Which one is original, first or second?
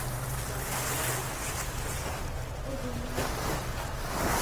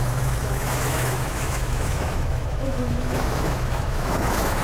first